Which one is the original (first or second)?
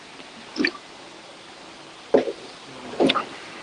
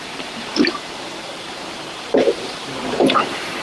first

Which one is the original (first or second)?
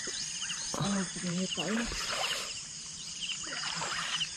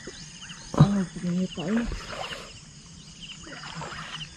second